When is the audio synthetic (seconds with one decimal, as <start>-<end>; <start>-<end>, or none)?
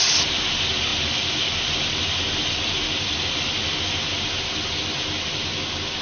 none